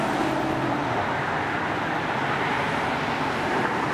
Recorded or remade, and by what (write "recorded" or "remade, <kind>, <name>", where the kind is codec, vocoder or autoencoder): recorded